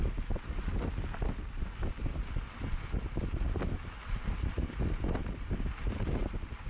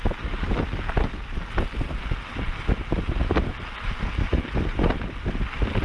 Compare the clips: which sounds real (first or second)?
second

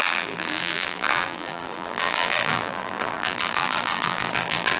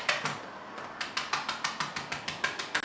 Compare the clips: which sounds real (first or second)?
second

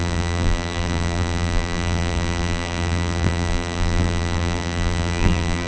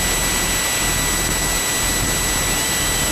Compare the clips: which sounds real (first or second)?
second